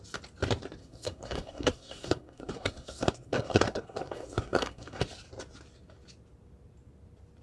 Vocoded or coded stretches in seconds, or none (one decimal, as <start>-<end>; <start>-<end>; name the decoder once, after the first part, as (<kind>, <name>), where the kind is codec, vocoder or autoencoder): 0.8-5.0 (codec, SNAC)

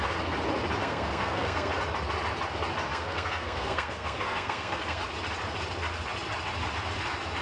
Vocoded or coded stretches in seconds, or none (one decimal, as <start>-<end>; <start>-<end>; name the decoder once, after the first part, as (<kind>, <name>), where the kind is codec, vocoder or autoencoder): 0.8-1.7 (codec, SNAC); 2.9-5.0

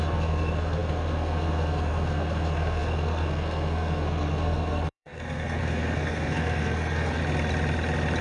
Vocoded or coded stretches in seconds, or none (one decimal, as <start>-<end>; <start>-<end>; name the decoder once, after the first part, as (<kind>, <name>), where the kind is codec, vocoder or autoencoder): 0.0-7.2 (codec, SNAC)

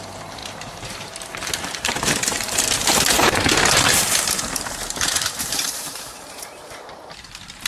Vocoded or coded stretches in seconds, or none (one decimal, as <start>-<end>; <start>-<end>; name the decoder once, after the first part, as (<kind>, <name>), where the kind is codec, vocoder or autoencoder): 0.0-7.7 (vocoder, BigVGAN v2)